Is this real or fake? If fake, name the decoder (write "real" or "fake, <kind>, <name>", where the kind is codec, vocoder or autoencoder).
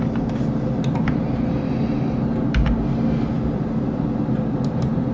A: real